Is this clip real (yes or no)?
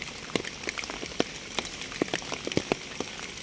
yes